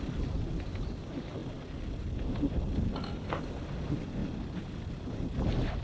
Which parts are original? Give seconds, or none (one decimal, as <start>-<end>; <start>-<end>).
0.0-5.8